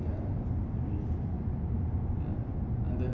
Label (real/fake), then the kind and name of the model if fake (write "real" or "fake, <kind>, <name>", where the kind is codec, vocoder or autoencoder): real